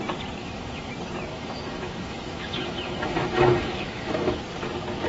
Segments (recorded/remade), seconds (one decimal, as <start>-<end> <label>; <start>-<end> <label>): 0.0-0.4 recorded; 0.4-0.9 remade; 0.9-1.3 recorded; 1.3-4.4 remade; 4.4-5.1 recorded